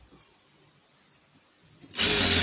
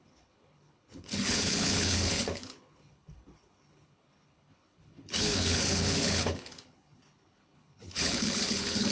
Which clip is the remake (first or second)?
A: second